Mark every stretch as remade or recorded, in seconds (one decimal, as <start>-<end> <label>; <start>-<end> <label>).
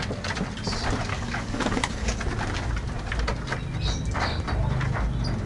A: 0.0-1.1 recorded; 1.1-2.2 remade; 2.2-5.5 recorded